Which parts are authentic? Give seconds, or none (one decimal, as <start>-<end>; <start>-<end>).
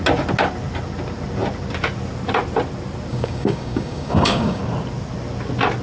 0.0-3.1; 4.6-5.8